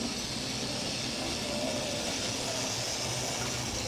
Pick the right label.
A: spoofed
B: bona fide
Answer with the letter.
B